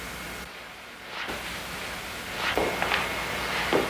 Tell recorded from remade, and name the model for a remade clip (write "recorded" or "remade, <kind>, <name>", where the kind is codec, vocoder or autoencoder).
recorded